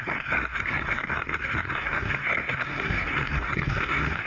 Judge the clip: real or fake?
fake